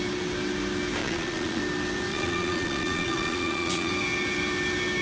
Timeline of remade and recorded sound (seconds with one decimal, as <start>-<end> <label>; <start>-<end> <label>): 0.0-1.0 recorded; 1.0-1.6 remade; 1.6-2.1 recorded; 2.1-3.9 remade; 3.9-5.0 recorded